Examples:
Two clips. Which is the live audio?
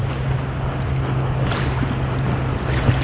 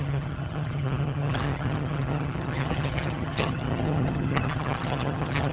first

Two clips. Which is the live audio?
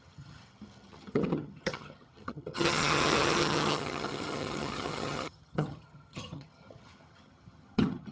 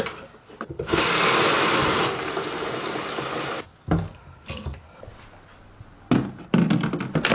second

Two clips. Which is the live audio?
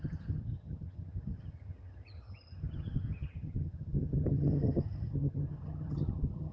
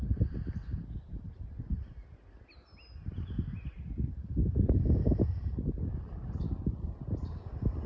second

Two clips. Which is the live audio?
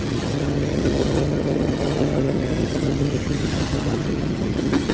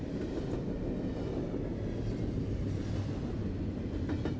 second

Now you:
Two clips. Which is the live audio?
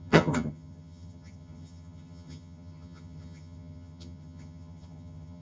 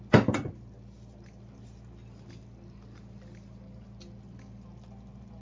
second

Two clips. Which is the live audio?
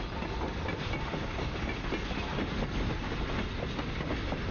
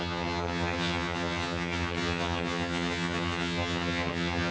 first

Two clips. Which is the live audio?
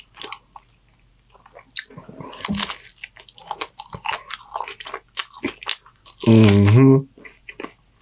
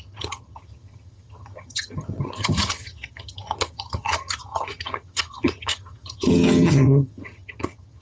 first